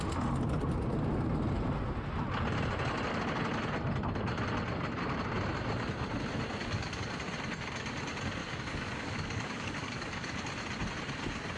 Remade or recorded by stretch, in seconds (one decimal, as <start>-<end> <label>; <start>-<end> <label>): 0.0-6.6 recorded; 6.6-7.1 remade; 7.1-8.4 recorded; 8.4-10.4 remade; 10.4-11.6 recorded